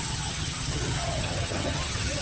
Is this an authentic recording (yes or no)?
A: no